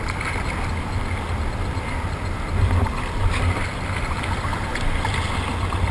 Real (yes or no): yes